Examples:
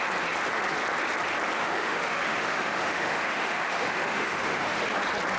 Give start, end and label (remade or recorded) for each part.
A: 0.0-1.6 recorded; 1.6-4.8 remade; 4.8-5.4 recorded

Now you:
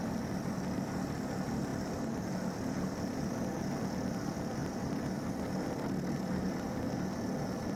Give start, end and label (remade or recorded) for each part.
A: 0.0-7.8 recorded

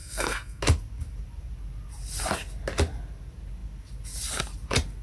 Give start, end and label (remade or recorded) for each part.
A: 0.0-0.6 remade; 0.6-5.0 recorded